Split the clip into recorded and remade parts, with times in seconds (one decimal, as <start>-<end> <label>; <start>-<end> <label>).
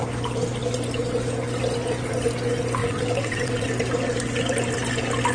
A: 0.0-2.8 recorded; 2.8-3.7 remade; 3.7-5.3 recorded